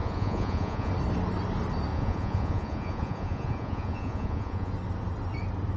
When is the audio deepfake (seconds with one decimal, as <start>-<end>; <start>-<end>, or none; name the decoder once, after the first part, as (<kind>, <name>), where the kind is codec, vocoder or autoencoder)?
0.0-0.9 (vocoder, Vocos); 1.9-4.7